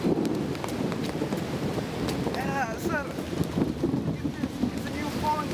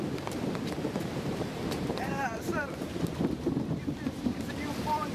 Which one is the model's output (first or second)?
second